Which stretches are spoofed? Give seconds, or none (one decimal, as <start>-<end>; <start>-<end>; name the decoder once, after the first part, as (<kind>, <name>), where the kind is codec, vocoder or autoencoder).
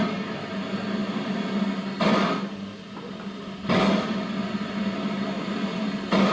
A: none